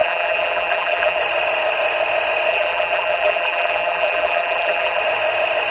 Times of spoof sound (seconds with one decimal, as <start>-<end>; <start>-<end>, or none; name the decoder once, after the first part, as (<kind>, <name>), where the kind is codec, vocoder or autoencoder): 0.0-1.2 (vocoder, BigVGAN v2); 2.5-5.0